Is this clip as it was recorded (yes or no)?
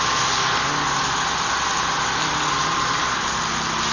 yes